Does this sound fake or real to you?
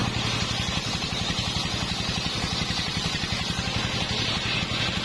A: real